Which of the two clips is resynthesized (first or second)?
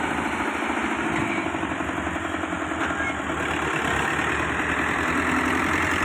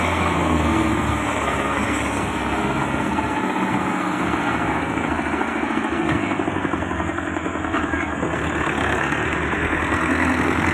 second